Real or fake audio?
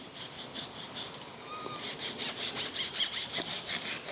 fake